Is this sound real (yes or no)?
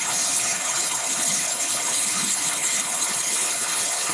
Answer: no